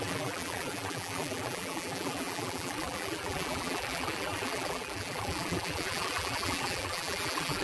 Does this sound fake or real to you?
fake